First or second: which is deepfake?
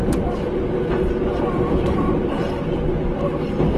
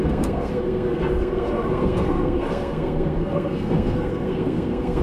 second